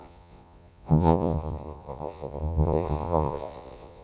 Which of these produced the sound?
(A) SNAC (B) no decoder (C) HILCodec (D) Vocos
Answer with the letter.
D